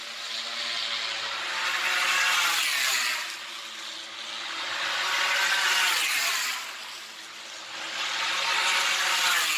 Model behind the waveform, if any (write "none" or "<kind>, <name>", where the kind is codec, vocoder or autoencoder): none